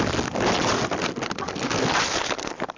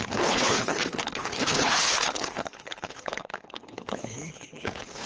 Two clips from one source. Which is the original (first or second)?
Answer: first